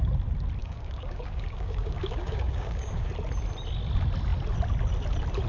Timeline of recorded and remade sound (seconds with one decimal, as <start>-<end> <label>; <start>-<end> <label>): 0.0-0.6 recorded; 0.6-3.1 remade; 3.1-5.5 recorded